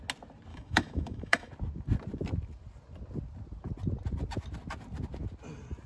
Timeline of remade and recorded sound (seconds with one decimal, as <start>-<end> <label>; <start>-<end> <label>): 0.0-0.5 recorded; 0.5-1.5 remade; 1.5-5.9 recorded